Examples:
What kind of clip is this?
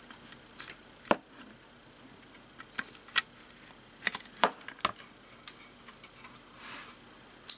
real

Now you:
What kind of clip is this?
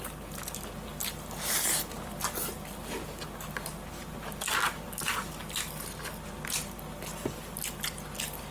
real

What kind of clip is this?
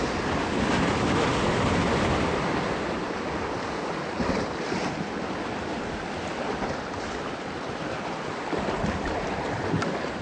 real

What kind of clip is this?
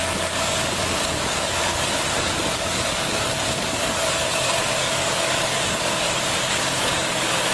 fake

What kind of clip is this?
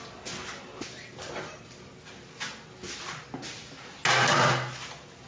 real